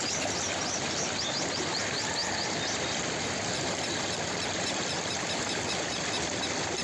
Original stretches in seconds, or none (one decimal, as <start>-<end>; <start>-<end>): none